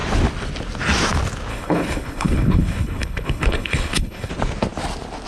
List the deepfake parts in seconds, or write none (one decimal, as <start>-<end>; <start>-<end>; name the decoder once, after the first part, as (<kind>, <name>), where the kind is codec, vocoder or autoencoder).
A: 1.5-4.3 (codec, HILCodec)